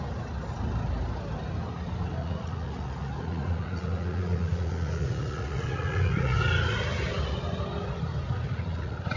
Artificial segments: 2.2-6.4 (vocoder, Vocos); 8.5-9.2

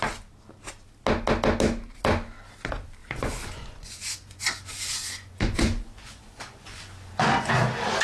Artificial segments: 3.0-7.5 (vocoder, Vocos)

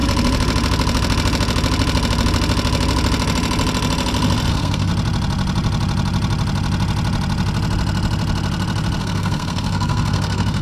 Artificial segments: 4.5-4.9 (codec, SNAC); 9.0-10.6

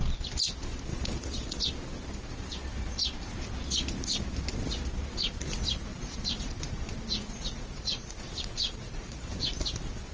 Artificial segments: 0.9-1.6 (vocoder, Vocos); 5.9-9.2

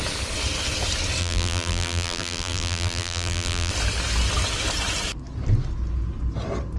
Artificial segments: 1.2-3.7 (vocoder, BigVGAN v2)

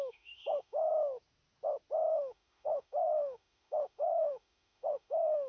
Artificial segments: 0.0-0.9 (autoencoder, DAC-VAE); 2.1-5.5